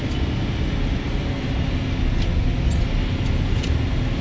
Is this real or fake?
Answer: real